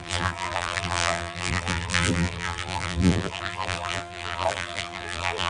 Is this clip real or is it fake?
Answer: fake